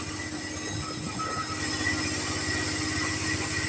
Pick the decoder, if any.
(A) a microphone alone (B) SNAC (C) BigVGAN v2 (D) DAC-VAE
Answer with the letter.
A